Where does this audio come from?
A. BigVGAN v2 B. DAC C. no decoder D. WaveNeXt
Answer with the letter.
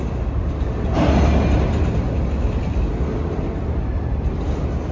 C